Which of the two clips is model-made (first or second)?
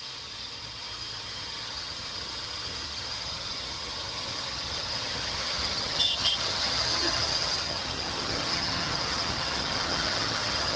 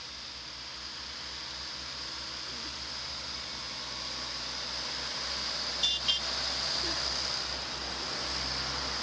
first